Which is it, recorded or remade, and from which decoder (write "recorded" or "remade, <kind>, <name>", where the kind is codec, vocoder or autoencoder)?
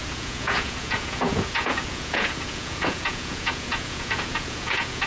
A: remade, vocoder, Vocos